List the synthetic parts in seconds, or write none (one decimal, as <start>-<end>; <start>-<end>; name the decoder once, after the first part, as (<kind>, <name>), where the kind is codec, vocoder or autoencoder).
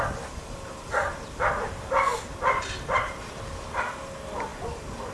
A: none